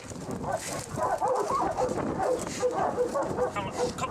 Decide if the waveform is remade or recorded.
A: recorded